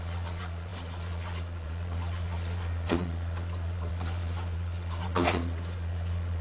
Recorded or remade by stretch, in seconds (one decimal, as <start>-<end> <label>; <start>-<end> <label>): 0.0-6.4 remade